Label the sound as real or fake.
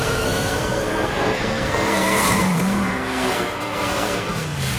fake